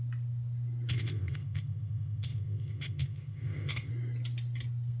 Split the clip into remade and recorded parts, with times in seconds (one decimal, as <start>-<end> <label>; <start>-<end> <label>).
0.0-0.9 recorded; 0.9-3.9 remade; 3.9-5.0 recorded